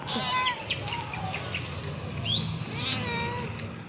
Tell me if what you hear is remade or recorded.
recorded